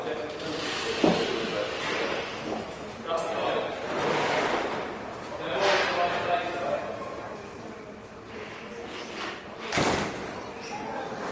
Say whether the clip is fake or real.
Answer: real